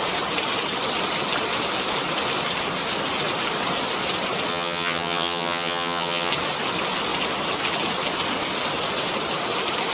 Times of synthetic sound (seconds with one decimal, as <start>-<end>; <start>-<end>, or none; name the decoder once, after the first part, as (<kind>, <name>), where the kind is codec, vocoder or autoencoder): 4.5-6.3 (vocoder, HiFi-GAN)